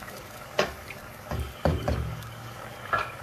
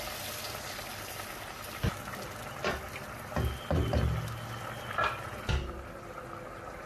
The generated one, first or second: first